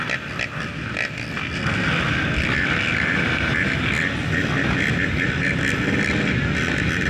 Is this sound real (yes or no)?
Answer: yes